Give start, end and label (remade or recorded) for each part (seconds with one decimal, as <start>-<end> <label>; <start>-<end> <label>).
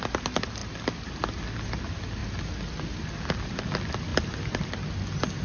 0.0-5.4 recorded